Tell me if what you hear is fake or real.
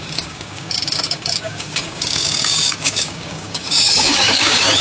fake